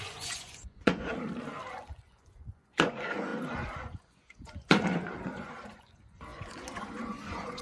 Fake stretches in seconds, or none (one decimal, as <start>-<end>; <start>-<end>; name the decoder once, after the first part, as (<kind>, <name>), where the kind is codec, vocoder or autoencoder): 0.0-1.1 (vocoder, Vocos); 1.7-7.6